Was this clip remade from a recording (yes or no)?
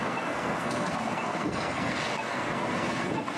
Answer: yes